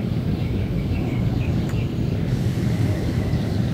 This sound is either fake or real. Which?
fake